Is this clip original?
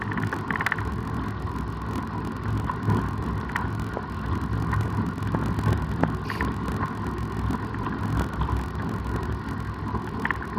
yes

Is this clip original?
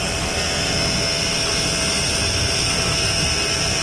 no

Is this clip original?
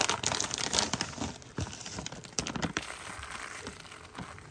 no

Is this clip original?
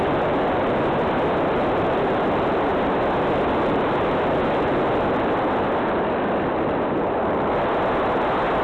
yes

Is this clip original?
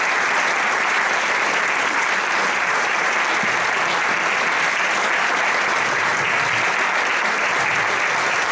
yes